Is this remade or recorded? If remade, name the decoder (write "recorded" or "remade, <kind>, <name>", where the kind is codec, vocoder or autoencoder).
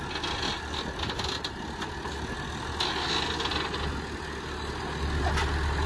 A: recorded